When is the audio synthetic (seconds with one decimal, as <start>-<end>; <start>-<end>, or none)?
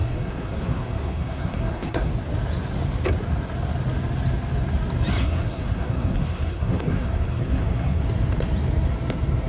0.0-2.1; 5.2-8.0